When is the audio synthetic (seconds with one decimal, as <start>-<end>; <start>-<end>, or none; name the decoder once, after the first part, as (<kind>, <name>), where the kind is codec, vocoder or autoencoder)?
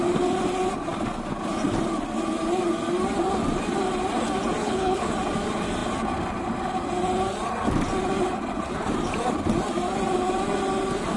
4.6-5.1 (codec, HILCodec)